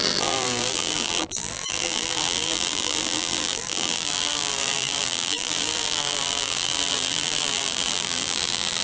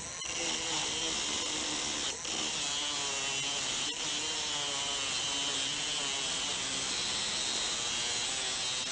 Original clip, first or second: second